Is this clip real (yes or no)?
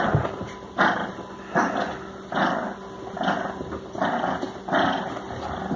yes